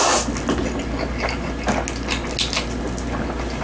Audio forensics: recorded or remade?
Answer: recorded